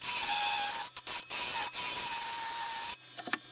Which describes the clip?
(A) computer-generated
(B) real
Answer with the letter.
B